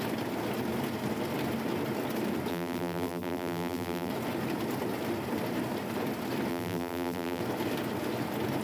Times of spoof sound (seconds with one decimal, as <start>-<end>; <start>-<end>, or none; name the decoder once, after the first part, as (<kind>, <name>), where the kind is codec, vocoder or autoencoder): 2.5-4.1 (vocoder, BigVGAN v2); 6.5-7.4